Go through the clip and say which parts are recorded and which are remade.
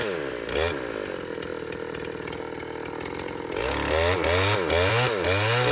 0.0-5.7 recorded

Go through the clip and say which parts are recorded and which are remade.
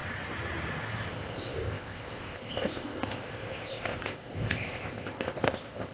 0.0-1.1 recorded; 1.1-5.9 remade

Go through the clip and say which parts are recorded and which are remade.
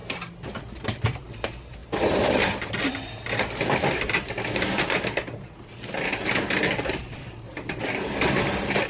0.0-8.9 recorded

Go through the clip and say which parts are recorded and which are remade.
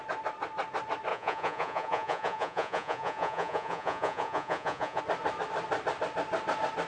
0.0-1.1 recorded; 1.1-5.0 remade; 5.0-6.9 recorded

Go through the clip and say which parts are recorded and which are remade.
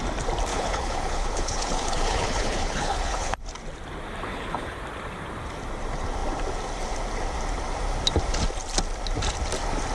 0.0-0.5 recorded; 0.5-3.4 remade; 3.4-4.3 recorded; 4.3-4.8 remade; 4.8-9.9 recorded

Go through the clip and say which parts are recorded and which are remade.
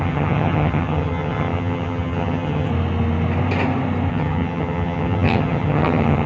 0.0-2.7 remade; 2.7-4.1 recorded; 4.1-6.3 remade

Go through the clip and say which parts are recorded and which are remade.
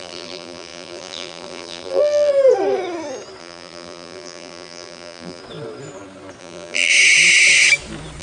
0.0-2.3 remade; 2.3-3.4 recorded; 3.4-5.4 remade; 5.4-6.4 recorded; 6.4-6.9 remade; 6.9-8.2 recorded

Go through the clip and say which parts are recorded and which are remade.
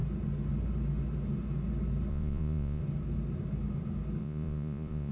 0.0-2.1 recorded; 2.1-2.8 remade; 2.8-4.2 recorded; 4.2-5.1 remade